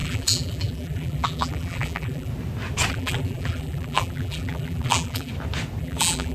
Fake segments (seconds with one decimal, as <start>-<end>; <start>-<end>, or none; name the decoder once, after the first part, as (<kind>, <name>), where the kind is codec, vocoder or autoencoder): 0.0-2.3 (vocoder, BigVGAN v2); 2.9-5.3; 5.8-6.3